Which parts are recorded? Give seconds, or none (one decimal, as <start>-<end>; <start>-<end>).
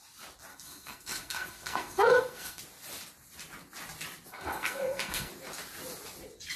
0.0-0.5; 2.6-4.3; 5.3-6.6